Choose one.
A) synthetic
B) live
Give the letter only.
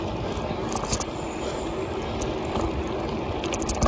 B